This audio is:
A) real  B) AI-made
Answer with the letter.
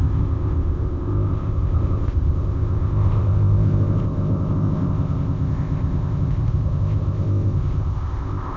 B